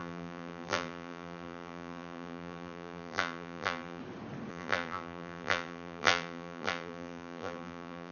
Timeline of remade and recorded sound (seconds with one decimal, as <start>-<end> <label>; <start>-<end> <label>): 0.0-4.0 remade; 4.0-4.5 recorded; 4.5-8.1 remade

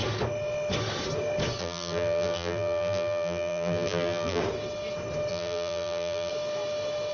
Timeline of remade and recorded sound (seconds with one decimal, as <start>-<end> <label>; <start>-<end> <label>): 0.0-1.6 recorded; 1.6-4.4 remade; 4.4-5.3 recorded; 5.3-6.3 remade; 6.3-7.1 recorded

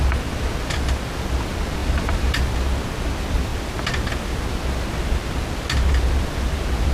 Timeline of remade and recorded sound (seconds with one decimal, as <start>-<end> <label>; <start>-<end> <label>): 0.0-1.8 recorded; 1.8-2.4 remade; 2.4-6.9 recorded

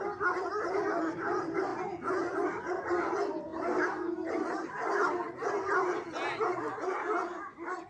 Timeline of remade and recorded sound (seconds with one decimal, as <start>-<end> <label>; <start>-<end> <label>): 0.0-3.5 recorded; 3.5-4.9 remade; 4.9-7.9 recorded

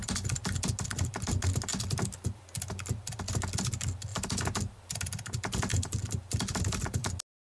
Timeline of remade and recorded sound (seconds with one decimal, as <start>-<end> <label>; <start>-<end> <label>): 0.0-4.1 recorded; 4.1-5.0 remade; 5.0-5.7 recorded; 5.7-7.1 remade; 7.1-7.6 recorded